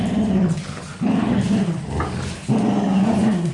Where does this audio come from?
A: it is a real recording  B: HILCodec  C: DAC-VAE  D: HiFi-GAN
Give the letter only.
A